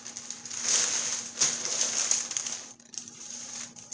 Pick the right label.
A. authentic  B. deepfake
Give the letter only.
A